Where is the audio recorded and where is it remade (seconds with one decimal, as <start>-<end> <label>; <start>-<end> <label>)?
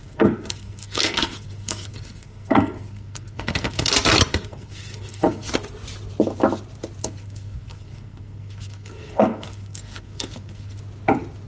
0.0-3.9 remade; 3.9-4.3 recorded; 4.3-5.5 remade; 5.5-7.0 recorded; 7.0-10.8 remade; 10.8-11.5 recorded